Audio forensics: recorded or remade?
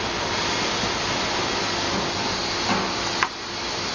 recorded